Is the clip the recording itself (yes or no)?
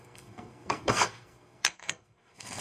no